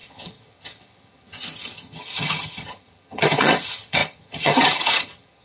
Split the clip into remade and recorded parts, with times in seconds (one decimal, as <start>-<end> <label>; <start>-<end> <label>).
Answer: 0.0-5.4 remade